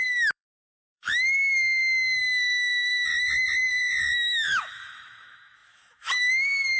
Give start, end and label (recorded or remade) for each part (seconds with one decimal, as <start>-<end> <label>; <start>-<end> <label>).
0.0-3.1 remade; 3.1-4.0 recorded; 4.0-6.8 remade